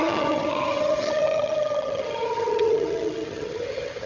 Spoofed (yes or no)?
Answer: yes